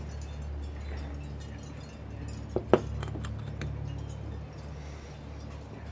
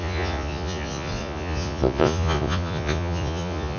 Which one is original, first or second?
first